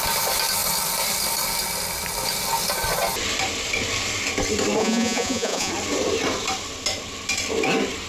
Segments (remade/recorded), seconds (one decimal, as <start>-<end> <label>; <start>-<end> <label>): 0.0-4.8 recorded; 4.8-5.7 remade; 5.7-8.1 recorded